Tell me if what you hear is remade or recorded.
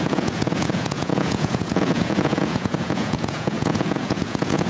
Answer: remade